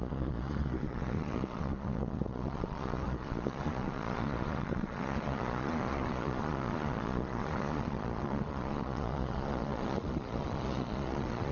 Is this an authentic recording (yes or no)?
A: no